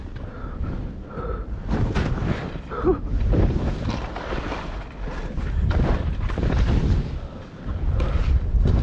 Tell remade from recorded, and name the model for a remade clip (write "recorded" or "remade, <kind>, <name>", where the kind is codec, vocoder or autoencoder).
recorded